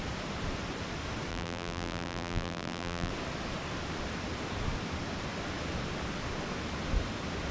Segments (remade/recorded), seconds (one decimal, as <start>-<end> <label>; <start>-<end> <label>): 0.0-1.3 recorded; 1.3-3.1 remade; 3.1-7.5 recorded